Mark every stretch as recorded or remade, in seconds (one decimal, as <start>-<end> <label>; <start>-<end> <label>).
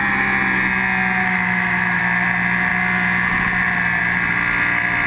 0.0-1.2 recorded; 1.2-2.0 remade; 2.0-5.1 recorded